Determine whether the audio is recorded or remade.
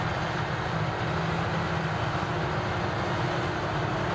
recorded